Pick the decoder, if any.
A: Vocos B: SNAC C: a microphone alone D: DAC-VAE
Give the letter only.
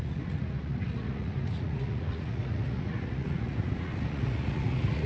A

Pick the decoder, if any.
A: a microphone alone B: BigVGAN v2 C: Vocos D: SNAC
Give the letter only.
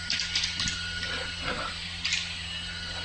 A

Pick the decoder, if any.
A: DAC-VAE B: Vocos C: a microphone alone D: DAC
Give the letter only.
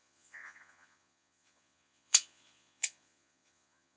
B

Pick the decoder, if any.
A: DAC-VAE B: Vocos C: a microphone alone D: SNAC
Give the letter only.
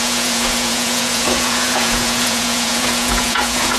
B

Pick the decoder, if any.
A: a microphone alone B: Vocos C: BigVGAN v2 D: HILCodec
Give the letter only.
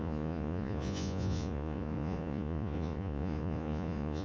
B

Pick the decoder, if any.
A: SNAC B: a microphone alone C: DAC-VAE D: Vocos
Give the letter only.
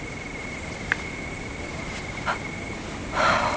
B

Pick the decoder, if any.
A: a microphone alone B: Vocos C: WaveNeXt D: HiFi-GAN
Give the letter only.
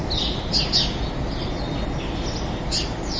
A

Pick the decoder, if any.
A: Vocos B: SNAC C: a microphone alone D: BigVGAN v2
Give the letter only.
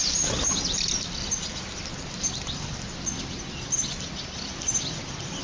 C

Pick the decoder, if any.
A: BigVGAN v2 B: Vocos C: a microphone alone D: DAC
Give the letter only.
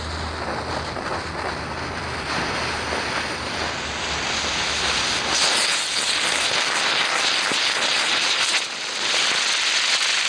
C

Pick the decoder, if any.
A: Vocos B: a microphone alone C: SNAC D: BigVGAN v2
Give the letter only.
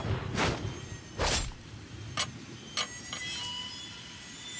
B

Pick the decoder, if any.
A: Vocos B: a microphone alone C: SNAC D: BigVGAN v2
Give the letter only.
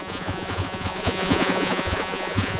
A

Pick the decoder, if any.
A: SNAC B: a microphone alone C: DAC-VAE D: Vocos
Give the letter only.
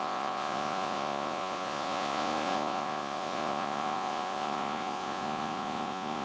D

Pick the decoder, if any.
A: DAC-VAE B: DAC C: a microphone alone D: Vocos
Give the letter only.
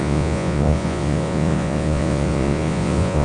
D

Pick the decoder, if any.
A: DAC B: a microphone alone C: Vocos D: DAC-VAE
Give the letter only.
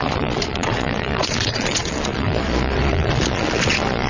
C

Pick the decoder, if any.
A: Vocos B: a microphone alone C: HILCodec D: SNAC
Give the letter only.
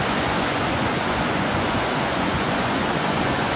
A